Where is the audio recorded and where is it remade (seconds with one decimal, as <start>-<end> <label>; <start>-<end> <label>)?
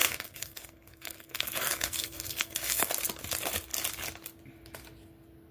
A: 0.0-2.9 remade; 2.9-5.5 recorded